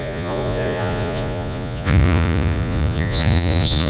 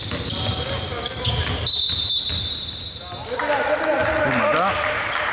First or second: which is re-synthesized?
first